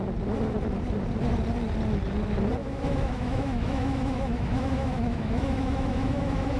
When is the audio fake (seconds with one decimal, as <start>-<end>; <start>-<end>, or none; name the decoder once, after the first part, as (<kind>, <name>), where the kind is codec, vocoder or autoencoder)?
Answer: 2.6-6.6 (autoencoder, DAC-VAE)